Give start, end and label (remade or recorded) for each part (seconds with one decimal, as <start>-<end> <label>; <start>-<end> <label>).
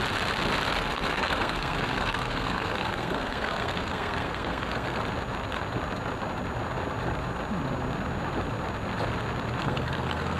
0.0-0.8 recorded; 0.8-5.0 remade; 5.0-9.6 recorded; 9.6-10.4 remade